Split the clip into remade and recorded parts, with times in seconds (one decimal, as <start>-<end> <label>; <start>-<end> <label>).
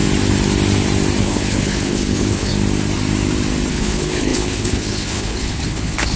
0.0-1.2 recorded; 1.2-2.5 remade; 2.5-3.7 recorded; 3.7-6.2 remade